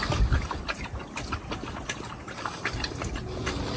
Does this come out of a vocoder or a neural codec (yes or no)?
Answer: no